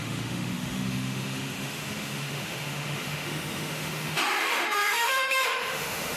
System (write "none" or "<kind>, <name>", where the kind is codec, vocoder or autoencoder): autoencoder, DAC-VAE